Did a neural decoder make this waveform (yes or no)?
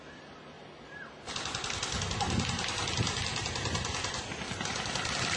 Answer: no